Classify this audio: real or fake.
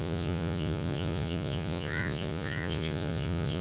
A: fake